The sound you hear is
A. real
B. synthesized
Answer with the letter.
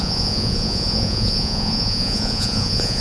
B